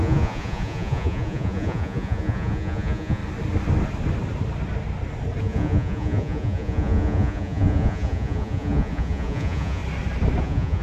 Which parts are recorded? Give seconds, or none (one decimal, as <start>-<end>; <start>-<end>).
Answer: 3.2-5.4; 9.8-10.4